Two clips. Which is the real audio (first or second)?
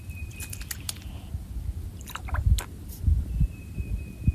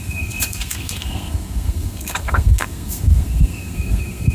first